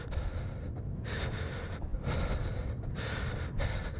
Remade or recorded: recorded